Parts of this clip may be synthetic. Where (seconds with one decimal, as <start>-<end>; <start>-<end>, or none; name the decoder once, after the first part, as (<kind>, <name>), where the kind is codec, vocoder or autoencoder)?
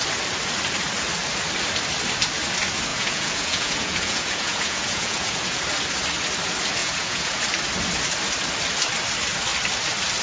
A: 2.9-5.6 (vocoder, Vocos); 6.8-7.4